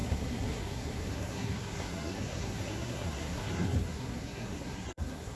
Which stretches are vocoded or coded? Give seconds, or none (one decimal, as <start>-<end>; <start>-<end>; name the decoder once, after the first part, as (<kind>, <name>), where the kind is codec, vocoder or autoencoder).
0.0-5.4 (codec, SNAC)